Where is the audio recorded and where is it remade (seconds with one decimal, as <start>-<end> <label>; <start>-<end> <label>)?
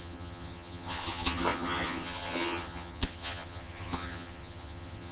0.0-5.1 remade